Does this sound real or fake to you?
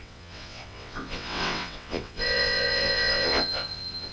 fake